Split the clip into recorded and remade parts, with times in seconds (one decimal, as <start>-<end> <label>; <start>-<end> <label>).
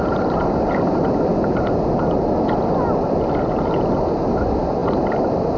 0.0-5.6 recorded